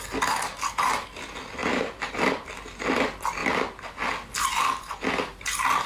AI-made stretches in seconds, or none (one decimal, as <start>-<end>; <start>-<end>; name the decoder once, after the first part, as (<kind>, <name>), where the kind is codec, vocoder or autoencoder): 1.6-2.1 (vocoder, BigVGAN v2)